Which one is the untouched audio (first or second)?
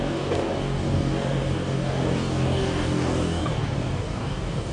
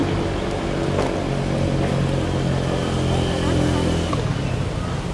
second